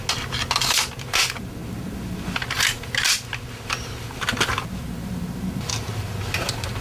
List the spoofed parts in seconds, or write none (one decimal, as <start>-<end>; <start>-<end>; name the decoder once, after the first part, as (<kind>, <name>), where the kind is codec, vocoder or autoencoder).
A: none